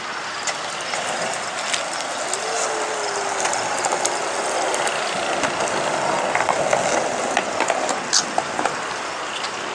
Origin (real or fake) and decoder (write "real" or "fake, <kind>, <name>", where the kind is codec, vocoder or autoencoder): real